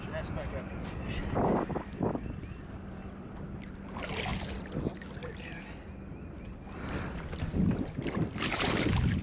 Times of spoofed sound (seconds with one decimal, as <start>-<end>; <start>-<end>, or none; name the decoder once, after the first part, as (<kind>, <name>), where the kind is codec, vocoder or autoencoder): none